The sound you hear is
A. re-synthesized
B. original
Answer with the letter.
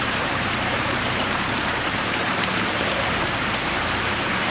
A